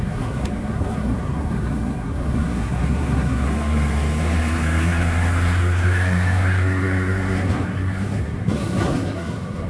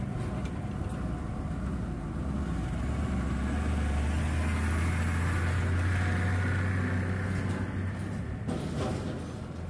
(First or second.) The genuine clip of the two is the second